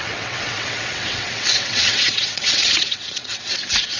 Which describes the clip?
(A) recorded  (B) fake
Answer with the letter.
B